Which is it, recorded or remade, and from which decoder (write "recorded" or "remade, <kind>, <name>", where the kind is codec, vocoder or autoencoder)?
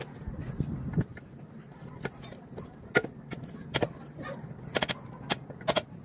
recorded